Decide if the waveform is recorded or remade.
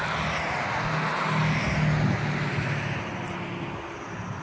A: recorded